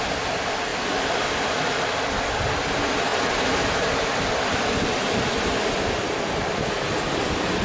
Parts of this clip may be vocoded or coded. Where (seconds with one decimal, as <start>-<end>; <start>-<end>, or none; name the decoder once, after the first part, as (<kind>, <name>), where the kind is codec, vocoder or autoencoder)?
0.7-2.0 (vocoder, BigVGAN v2)